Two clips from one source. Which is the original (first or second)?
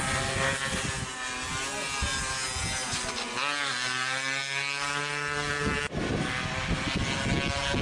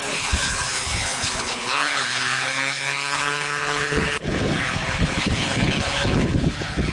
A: first